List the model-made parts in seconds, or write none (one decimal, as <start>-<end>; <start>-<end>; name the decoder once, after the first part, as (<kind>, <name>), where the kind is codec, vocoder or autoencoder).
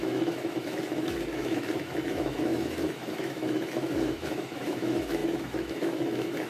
0.0-6.5 (autoencoder, DAC-VAE)